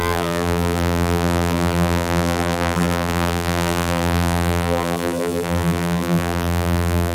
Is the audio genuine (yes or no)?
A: no